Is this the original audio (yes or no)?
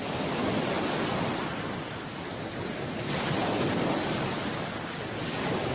yes